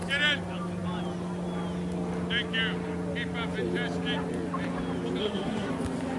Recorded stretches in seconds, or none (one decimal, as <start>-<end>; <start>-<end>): 0.0-5.2; 5.7-6.2